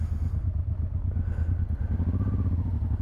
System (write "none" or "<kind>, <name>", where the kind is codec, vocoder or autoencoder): none